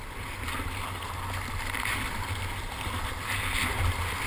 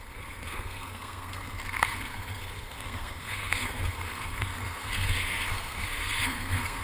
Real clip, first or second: first